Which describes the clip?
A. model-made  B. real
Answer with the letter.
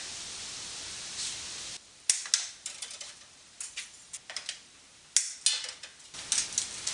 B